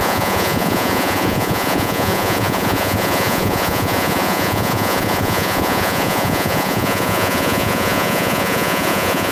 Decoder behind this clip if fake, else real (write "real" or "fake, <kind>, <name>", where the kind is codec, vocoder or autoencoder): fake, vocoder, Vocos